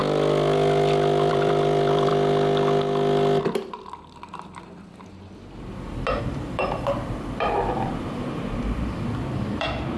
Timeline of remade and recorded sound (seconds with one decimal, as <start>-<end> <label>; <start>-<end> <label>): 0.0-1.3 recorded; 1.3-2.1 remade; 2.1-6.2 recorded; 6.2-10.0 remade